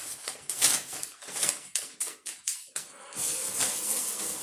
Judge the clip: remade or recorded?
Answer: remade